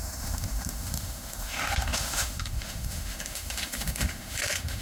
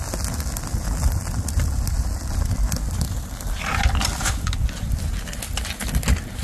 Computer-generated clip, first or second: first